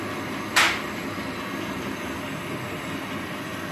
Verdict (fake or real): real